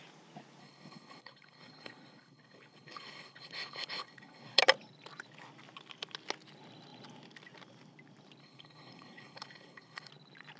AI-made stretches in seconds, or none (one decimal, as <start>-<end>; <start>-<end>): 0.6-4.6; 8.4-10.1